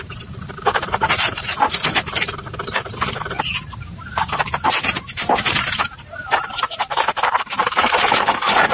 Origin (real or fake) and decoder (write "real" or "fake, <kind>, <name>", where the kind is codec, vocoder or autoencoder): fake, vocoder, BigVGAN v2